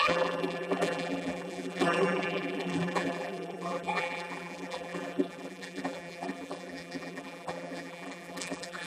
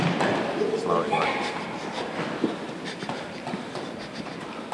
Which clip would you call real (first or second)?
second